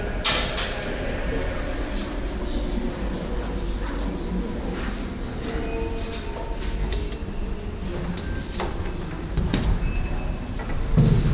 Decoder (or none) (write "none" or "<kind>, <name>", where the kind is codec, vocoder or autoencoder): none